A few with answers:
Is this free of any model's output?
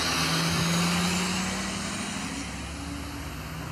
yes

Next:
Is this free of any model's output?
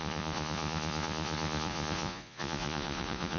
no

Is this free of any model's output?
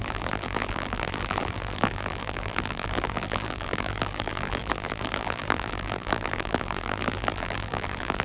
no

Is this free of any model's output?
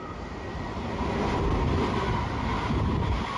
yes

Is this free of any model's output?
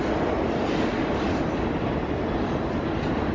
yes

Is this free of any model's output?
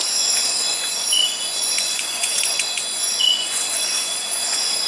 no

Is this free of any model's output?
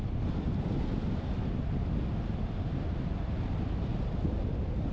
yes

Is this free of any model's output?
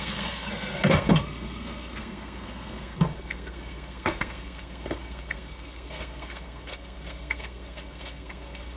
no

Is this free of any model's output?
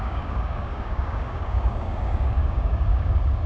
no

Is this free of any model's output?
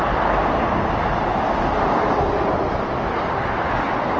yes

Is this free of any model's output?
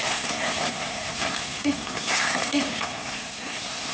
no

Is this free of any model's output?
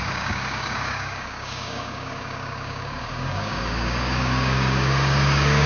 no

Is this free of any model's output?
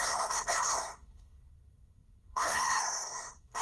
no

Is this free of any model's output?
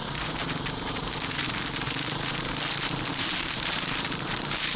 no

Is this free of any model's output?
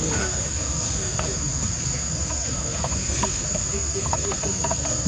no